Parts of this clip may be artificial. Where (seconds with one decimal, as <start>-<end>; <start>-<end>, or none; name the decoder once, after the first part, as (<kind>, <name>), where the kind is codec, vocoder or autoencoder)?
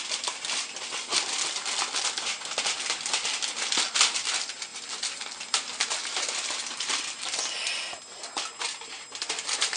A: none